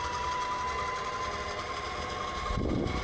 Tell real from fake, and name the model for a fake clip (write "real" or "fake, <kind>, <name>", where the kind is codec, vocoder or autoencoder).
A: real